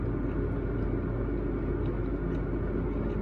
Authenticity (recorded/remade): recorded